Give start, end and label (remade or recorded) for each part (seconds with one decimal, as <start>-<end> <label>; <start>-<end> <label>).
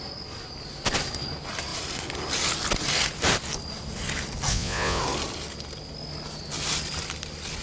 0.0-4.5 recorded; 4.5-5.0 remade; 5.0-7.6 recorded